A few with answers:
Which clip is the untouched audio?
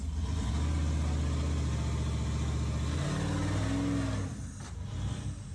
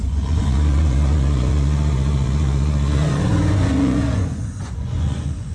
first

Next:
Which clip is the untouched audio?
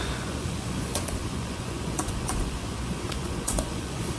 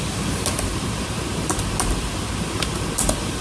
second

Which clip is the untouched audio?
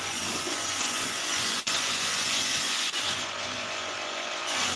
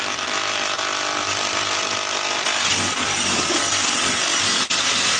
second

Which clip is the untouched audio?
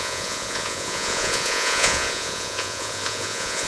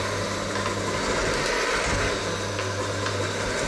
second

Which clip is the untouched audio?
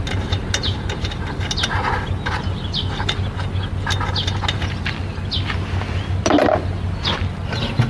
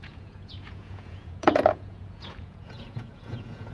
first